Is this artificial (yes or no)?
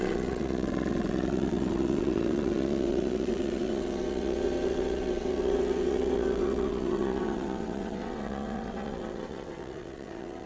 yes